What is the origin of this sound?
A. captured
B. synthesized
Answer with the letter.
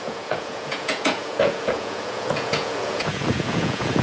B